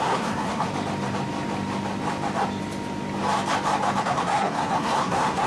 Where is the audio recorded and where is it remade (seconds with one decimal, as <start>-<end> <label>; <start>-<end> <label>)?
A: 0.0-0.7 remade; 0.7-4.0 recorded; 4.0-5.5 remade